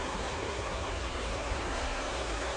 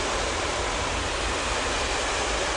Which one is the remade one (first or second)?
first